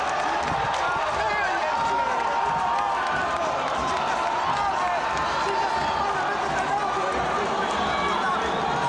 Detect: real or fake real